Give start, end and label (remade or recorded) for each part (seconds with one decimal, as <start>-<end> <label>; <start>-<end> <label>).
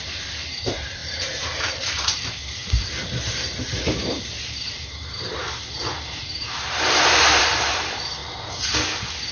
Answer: 0.0-1.0 remade; 1.0-1.6 recorded; 1.6-8.2 remade; 8.2-9.3 recorded